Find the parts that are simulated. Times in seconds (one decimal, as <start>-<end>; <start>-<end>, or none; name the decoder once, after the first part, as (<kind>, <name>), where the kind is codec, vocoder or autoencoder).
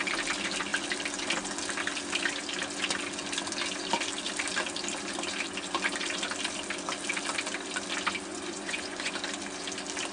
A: 8.3-9.1 (vocoder, Vocos)